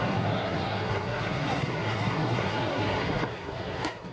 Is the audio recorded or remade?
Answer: remade